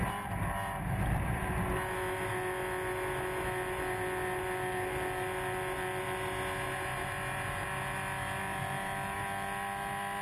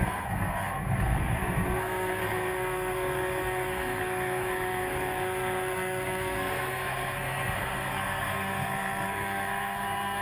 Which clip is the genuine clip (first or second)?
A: first